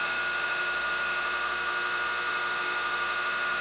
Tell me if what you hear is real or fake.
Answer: fake